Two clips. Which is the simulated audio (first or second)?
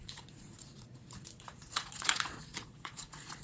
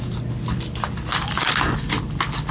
first